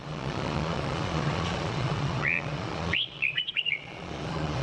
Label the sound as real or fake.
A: fake